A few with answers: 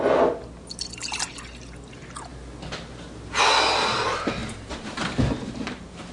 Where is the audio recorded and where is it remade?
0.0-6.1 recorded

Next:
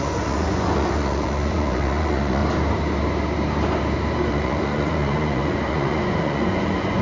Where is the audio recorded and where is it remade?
0.0-2.4 remade; 2.4-4.3 recorded; 4.3-7.0 remade

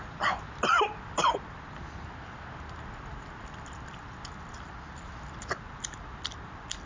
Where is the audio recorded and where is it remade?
0.0-6.9 recorded

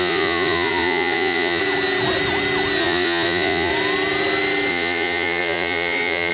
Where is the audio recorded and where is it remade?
0.0-1.6 remade; 1.6-2.8 recorded; 2.8-3.7 remade; 3.7-4.7 recorded; 4.7-6.3 remade

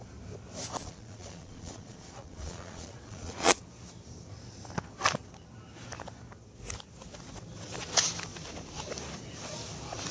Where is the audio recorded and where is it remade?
0.0-0.8 recorded; 0.8-3.6 remade; 3.6-10.1 recorded

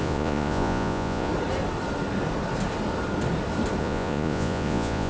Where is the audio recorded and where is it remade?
0.0-1.3 remade; 1.3-3.8 recorded; 3.8-5.1 remade

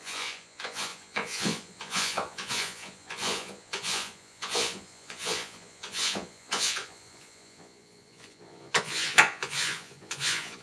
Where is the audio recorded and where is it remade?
0.0-10.6 remade

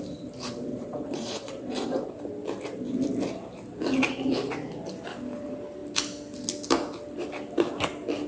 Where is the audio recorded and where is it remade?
0.0-0.7 recorded; 0.7-2.1 remade; 2.1-8.3 recorded